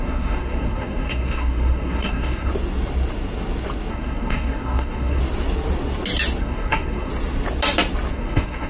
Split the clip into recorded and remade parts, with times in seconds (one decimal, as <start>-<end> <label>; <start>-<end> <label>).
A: 0.0-2.5 remade; 2.5-3.9 recorded; 3.9-5.2 remade; 5.2-6.4 recorded; 6.4-7.1 remade; 7.1-8.1 recorded; 8.1-8.7 remade